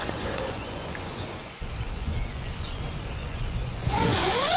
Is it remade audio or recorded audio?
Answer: remade